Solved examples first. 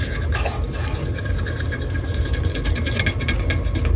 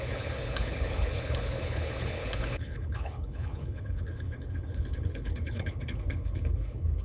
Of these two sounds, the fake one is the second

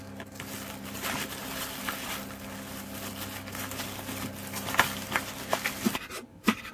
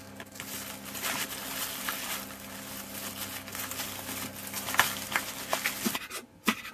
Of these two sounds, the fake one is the first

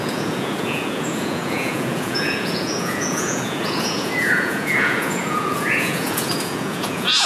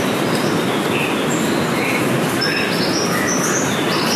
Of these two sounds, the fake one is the first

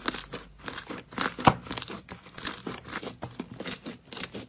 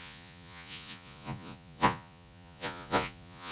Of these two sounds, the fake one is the second